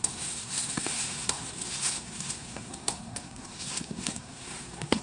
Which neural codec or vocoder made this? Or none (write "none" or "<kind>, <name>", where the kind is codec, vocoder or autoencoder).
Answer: codec, SNAC